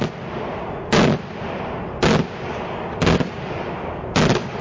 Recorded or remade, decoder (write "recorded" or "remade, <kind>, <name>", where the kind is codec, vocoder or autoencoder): recorded